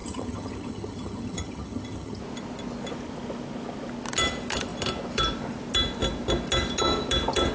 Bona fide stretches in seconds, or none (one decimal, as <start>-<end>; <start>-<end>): 2.2-7.5